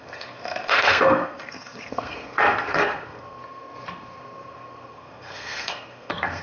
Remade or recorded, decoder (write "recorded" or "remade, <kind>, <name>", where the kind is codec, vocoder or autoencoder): remade, codec, SNAC